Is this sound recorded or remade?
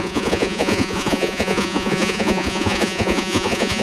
remade